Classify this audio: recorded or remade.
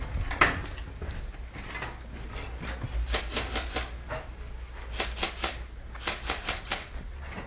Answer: recorded